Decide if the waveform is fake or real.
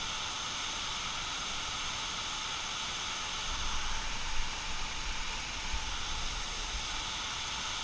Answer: real